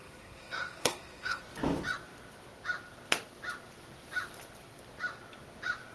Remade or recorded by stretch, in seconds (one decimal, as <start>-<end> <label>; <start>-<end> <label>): 0.0-1.4 remade; 1.4-5.9 recorded

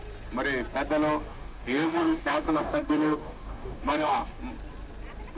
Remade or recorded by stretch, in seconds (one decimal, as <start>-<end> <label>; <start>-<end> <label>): 0.0-1.2 recorded; 1.2-4.4 remade; 4.4-5.4 recorded

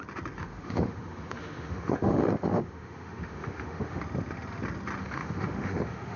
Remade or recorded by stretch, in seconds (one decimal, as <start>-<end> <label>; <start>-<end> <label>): 0.0-0.4 recorded; 0.4-4.0 remade; 4.0-5.0 recorded; 5.0-6.2 remade